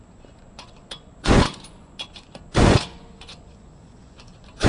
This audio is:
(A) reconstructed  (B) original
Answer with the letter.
A